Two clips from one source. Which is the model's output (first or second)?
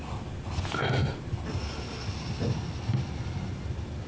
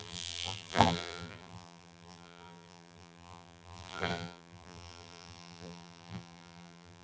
second